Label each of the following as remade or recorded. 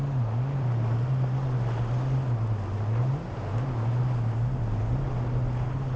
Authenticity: recorded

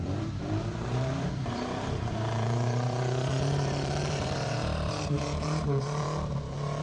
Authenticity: remade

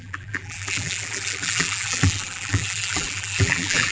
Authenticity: remade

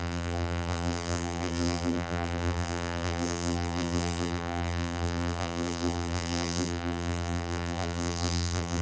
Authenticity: remade